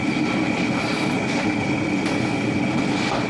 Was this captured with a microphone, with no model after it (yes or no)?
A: yes